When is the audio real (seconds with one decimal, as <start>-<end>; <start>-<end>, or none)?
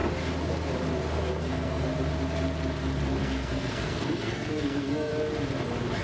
0.0-1.4; 1.9-3.2; 5.1-6.0